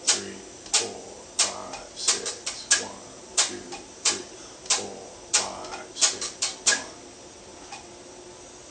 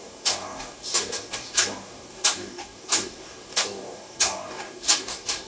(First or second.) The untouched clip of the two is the first